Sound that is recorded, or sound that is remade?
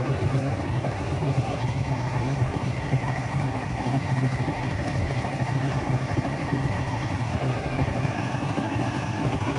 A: remade